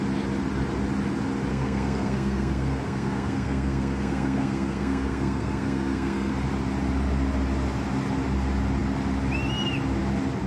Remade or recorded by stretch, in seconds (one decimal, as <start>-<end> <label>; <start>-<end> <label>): 0.0-1.5 recorded; 1.5-6.3 remade; 6.3-10.5 recorded